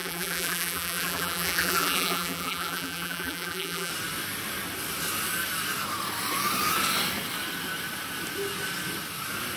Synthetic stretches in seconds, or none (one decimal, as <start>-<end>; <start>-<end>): 0.0-3.9